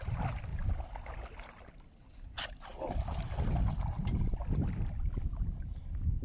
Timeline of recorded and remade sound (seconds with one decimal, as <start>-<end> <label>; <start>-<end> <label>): 0.0-6.2 recorded